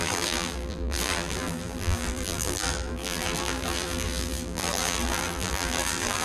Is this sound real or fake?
fake